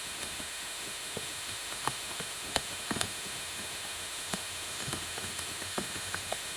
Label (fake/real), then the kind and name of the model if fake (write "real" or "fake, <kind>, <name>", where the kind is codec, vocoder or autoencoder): fake, autoencoder, DAC-VAE